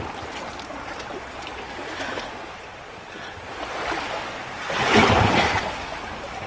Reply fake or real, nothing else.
real